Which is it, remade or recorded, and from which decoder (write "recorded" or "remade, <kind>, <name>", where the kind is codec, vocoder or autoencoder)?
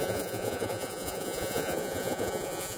remade, vocoder, Vocos